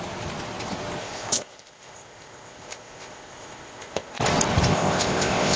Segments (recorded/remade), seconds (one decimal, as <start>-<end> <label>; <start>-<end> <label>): 0.0-1.0 recorded; 1.0-4.2 remade; 4.2-4.7 recorded; 4.7-5.6 remade